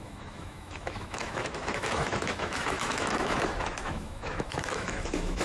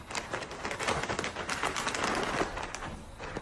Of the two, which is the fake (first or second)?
first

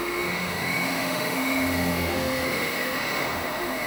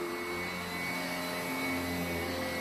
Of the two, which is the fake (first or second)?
first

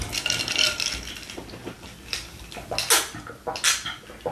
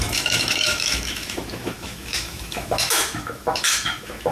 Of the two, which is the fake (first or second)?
second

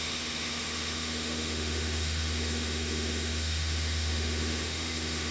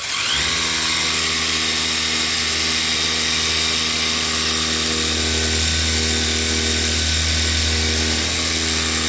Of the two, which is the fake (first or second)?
first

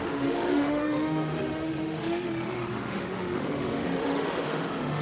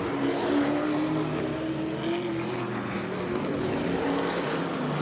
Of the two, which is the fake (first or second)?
first